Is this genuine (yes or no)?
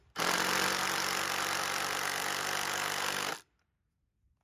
yes